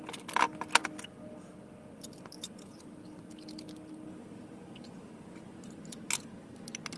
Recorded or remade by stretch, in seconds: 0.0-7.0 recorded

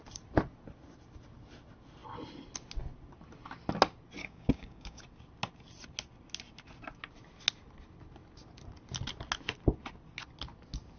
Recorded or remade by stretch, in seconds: 0.0-4.2 recorded; 4.2-5.0 remade; 5.0-11.0 recorded

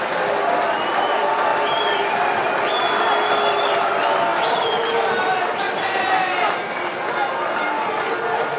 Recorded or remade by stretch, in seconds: 0.0-8.6 recorded

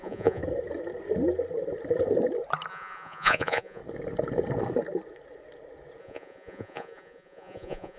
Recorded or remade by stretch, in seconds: 0.0-0.4 remade; 0.4-2.7 recorded; 2.7-3.8 remade; 3.8-6.0 recorded; 6.0-8.0 remade

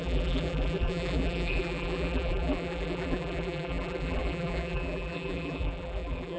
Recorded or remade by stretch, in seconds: 0.0-6.4 remade

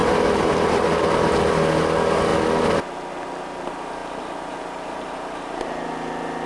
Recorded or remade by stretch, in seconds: 0.0-1.4 remade; 1.4-6.5 recorded

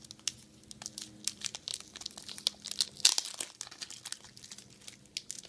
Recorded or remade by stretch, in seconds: 0.0-5.5 recorded

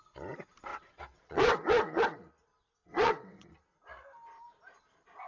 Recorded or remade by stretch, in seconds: 0.0-0.7 recorded; 0.7-2.0 remade; 2.0-2.8 recorded; 2.8-3.5 remade; 3.5-5.3 recorded